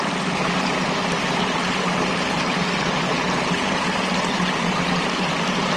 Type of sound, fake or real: real